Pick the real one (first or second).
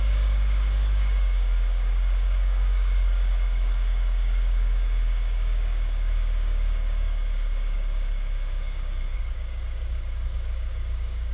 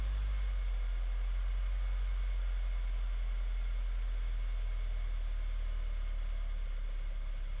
second